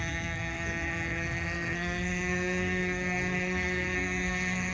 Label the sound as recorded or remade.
remade